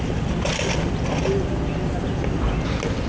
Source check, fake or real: real